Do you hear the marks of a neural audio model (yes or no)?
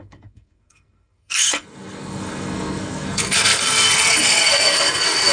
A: yes